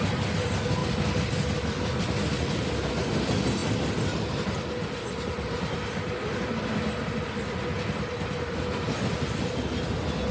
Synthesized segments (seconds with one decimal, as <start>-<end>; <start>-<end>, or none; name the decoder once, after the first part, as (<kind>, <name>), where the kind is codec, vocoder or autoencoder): none